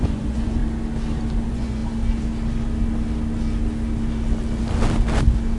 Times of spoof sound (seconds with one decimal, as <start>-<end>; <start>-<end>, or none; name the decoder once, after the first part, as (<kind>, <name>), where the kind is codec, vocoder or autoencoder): 0.0-0.6 (vocoder, Vocos); 1.4-1.8